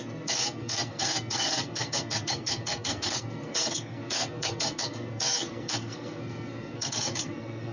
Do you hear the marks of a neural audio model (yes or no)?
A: yes